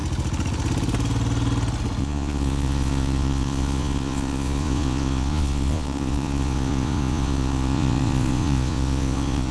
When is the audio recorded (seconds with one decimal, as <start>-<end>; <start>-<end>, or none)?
0.0-2.0